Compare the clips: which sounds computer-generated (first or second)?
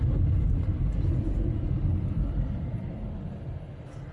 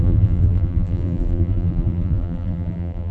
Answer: second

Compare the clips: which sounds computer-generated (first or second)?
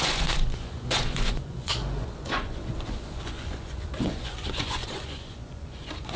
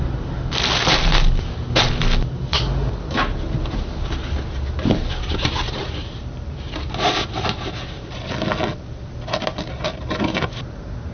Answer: first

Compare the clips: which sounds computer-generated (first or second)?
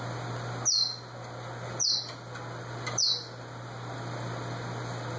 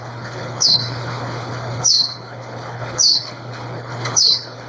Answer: second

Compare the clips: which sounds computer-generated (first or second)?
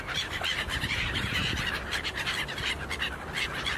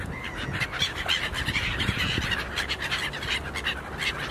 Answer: first